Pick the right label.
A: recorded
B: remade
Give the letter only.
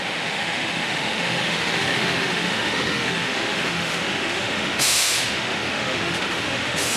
B